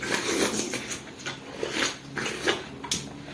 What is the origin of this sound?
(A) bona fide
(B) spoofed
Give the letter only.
A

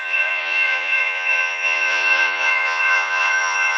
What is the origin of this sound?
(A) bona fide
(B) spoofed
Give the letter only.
B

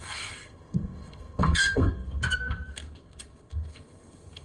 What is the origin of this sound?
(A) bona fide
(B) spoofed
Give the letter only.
B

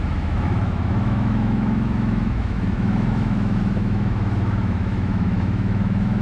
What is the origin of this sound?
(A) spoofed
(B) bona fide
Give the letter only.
A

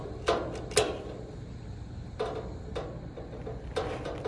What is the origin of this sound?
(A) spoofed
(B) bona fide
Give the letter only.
B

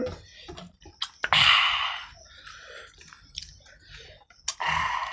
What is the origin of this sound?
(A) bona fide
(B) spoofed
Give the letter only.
A